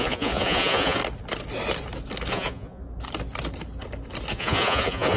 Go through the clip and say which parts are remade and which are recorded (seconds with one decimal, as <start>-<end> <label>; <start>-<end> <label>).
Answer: 0.0-1.0 remade; 1.0-2.3 recorded; 2.3-2.8 remade; 2.8-4.3 recorded; 4.3-5.2 remade